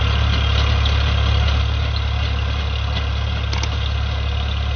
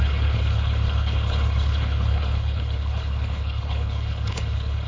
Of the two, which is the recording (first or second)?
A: first